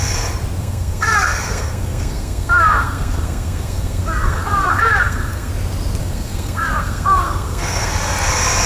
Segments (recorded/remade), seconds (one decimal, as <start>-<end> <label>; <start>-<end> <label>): 0.0-0.6 recorded; 0.6-5.5 remade; 5.5-6.0 recorded; 6.0-7.9 remade; 7.9-8.7 recorded